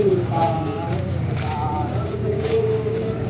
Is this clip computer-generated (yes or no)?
yes